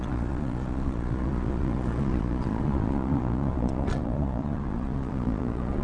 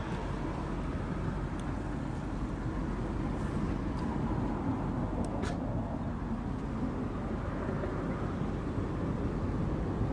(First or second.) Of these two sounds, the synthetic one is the first